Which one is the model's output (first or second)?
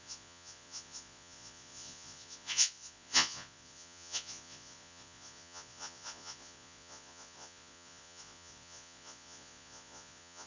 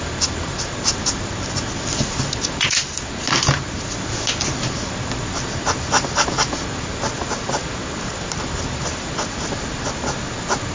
first